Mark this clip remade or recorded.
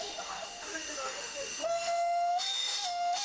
remade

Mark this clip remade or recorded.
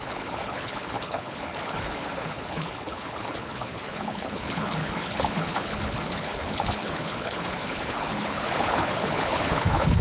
remade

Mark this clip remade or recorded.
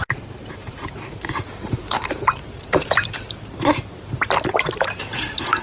remade